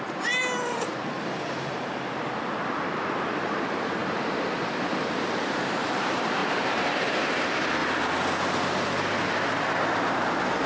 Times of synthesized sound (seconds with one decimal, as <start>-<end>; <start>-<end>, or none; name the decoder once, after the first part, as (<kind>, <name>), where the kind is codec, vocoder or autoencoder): 0.0-7.8 (vocoder, BigVGAN v2); 9.9-10.7

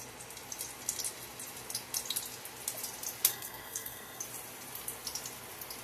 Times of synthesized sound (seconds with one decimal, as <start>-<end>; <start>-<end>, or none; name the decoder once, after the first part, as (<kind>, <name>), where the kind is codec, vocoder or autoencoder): 3.3-4.2 (codec, SNAC)